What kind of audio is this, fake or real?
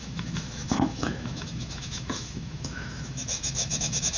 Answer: fake